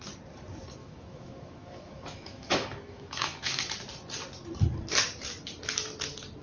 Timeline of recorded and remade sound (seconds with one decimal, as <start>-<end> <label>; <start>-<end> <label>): 0.0-0.8 recorded; 0.8-3.7 remade; 3.7-6.4 recorded

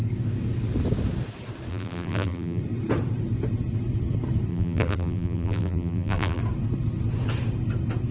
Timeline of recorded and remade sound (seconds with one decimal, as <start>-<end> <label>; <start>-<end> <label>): 0.0-1.7 recorded; 1.7-2.6 remade; 2.6-4.5 recorded; 4.5-6.4 remade; 6.4-8.1 recorded

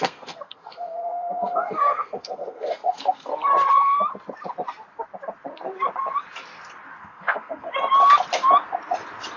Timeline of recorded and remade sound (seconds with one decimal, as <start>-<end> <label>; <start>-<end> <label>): 0.0-3.3 remade; 3.3-7.0 recorded; 7.0-7.7 remade; 7.7-9.4 recorded

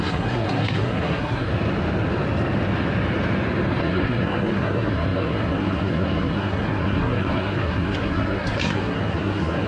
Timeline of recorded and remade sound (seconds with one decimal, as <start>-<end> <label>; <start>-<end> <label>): 0.0-1.5 remade; 1.5-3.8 recorded; 3.8-9.7 remade

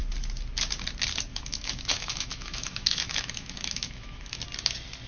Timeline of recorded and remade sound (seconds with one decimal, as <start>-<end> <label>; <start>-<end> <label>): 0.0-1.3 recorded; 1.3-4.4 remade; 4.4-5.1 recorded

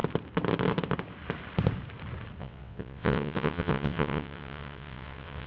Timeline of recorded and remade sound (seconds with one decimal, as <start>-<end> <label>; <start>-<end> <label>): 0.0-2.4 recorded; 2.4-5.5 remade

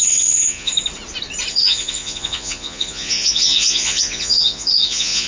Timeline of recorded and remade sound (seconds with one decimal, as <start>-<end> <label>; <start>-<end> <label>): 0.0-0.7 remade; 0.7-1.5 recorded; 1.5-5.3 remade